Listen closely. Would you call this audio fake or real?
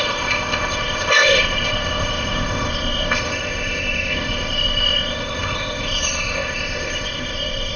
fake